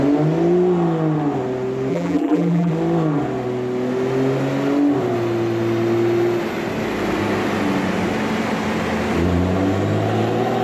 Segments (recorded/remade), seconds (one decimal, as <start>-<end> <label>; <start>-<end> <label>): 0.0-1.9 recorded; 1.9-2.7 remade; 2.7-10.6 recorded